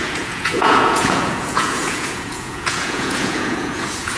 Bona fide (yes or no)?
no